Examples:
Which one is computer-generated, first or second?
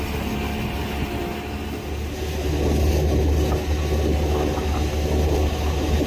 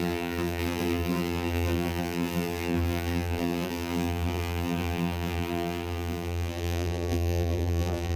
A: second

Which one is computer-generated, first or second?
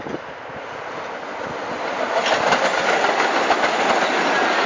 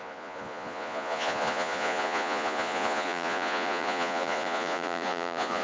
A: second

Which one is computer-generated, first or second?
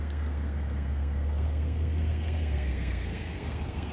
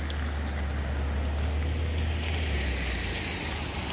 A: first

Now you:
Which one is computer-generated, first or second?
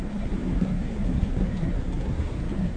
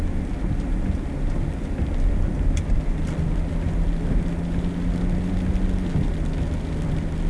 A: first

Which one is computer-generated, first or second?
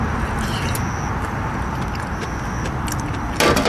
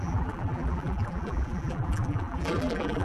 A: second